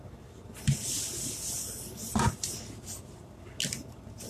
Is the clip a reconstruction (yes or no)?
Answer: no